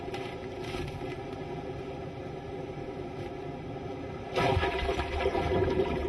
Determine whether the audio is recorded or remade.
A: remade